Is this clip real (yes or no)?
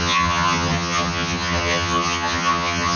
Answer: no